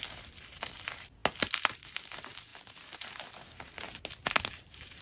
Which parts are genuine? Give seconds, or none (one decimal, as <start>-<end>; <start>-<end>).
0.0-5.0